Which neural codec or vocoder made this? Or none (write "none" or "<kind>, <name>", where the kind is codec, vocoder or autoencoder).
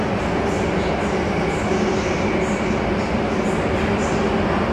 none